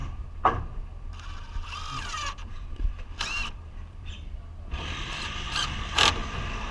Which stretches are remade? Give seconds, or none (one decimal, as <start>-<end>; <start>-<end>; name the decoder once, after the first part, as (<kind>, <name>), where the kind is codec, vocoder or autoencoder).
0.0-0.6 (vocoder, BigVGAN v2); 2.4-6.7